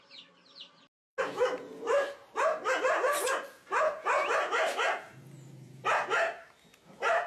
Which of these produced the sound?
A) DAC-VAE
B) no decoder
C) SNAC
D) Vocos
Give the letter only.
B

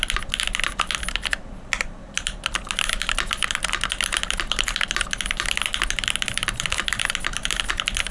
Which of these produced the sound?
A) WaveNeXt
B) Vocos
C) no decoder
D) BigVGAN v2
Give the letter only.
D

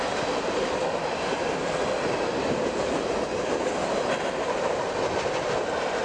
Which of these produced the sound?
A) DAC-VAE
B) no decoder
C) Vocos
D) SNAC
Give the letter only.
B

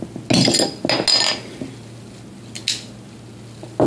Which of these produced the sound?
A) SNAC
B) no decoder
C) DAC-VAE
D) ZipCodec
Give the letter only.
B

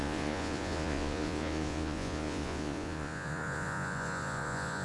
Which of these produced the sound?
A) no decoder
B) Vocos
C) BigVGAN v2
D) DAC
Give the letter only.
B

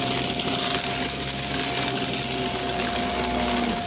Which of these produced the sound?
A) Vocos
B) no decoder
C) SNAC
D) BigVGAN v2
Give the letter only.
B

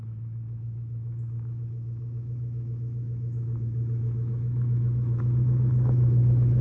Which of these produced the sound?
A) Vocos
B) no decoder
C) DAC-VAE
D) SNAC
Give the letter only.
C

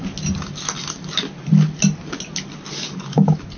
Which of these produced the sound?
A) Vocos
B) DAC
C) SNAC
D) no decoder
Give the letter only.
D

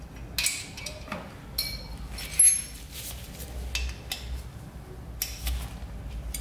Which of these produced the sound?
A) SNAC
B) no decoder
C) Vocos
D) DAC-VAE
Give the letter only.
B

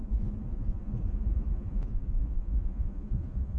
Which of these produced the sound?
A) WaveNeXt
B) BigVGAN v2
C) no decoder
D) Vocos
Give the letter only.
D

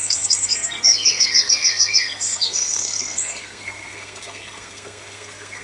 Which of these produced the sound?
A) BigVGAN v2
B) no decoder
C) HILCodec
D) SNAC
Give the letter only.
D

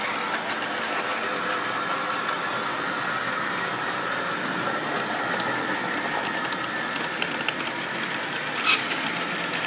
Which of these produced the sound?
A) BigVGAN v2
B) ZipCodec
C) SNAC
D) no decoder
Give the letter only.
D